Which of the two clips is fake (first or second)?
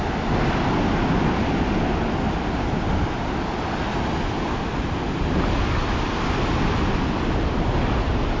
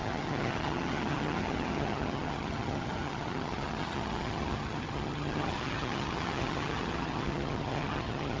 second